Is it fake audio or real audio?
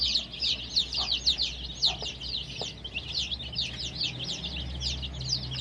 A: real